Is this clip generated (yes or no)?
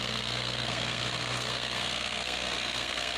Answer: yes